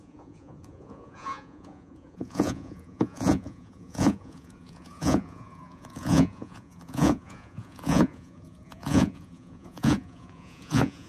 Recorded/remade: remade